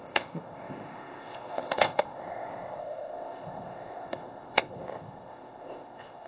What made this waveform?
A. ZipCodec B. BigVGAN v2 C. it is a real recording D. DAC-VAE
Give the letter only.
A